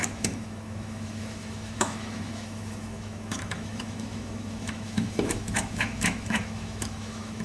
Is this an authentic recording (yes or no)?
no